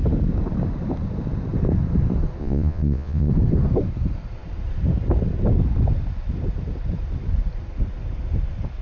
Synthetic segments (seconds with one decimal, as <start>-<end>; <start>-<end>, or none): 2.4-3.3